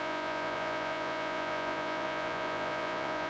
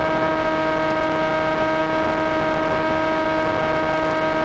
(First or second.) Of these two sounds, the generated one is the first